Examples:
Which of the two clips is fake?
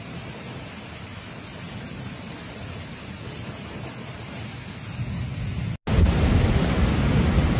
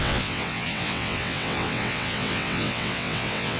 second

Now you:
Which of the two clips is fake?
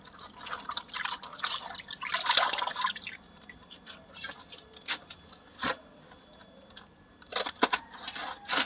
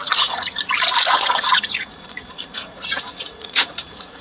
second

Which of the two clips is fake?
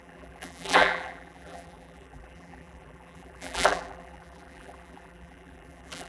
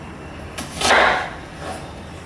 first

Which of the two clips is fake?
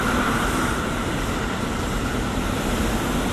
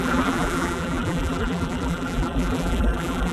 second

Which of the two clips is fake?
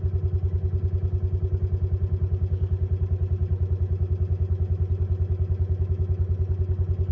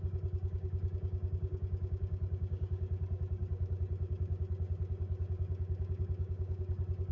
second